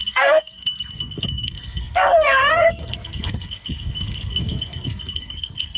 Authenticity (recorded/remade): remade